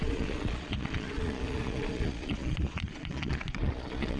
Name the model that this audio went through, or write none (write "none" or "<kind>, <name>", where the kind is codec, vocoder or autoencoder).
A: vocoder, Vocos